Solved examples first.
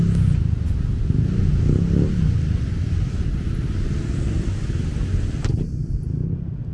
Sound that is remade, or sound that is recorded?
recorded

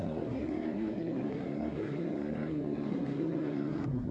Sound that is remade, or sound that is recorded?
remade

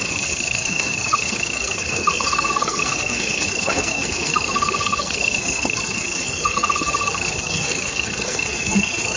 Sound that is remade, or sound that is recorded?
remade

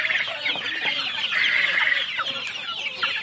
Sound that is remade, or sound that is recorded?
recorded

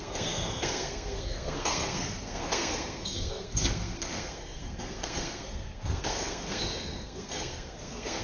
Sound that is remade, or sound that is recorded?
remade